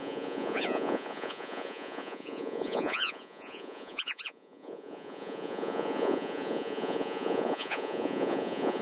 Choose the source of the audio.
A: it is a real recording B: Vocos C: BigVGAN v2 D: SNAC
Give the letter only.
B